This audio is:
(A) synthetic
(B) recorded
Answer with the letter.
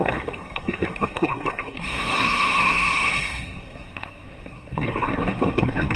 A